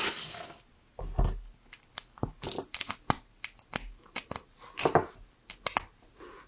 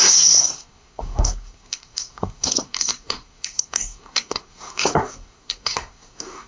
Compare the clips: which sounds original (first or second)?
first